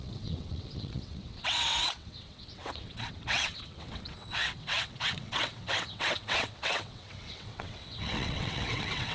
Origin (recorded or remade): remade